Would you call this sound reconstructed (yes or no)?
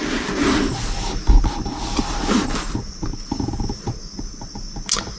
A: no